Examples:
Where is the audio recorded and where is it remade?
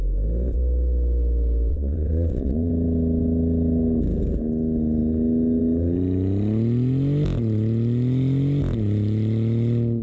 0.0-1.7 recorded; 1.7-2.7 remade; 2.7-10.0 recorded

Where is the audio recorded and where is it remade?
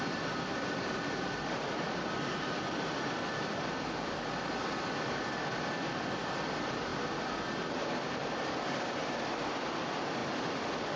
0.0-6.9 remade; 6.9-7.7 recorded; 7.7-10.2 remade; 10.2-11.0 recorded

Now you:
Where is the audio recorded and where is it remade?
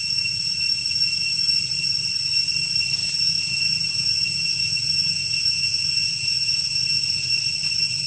0.0-0.8 remade; 0.8-3.0 recorded; 3.0-7.3 remade; 7.3-8.1 recorded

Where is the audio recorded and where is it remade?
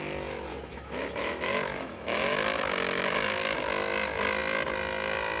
0.0-0.5 recorded; 0.5-3.7 remade; 3.7-5.4 recorded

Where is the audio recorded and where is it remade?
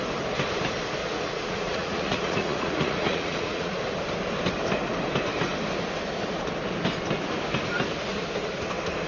0.0-1.0 recorded; 1.0-3.8 remade; 3.8-9.1 recorded